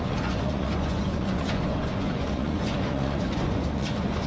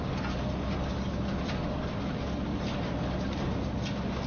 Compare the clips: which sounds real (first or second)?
second